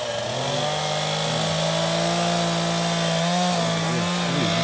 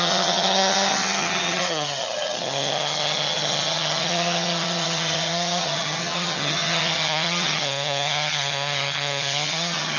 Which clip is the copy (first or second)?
second